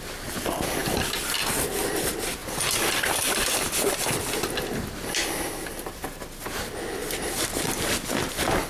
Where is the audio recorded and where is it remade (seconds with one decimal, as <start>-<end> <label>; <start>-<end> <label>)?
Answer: 0.0-8.7 recorded